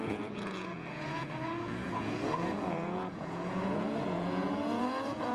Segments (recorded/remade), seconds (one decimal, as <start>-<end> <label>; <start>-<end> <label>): 0.0-5.3 remade

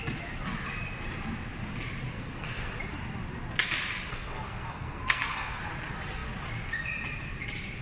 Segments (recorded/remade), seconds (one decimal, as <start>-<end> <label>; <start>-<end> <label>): 0.0-2.1 recorded; 2.1-2.7 remade; 2.7-4.1 recorded; 4.1-5.6 remade; 5.6-7.8 recorded

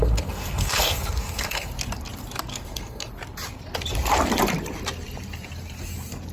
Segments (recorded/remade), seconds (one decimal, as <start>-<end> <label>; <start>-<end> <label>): 0.0-1.7 remade; 1.7-2.5 recorded; 2.5-3.1 remade; 3.1-6.3 recorded